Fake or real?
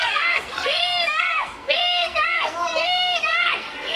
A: fake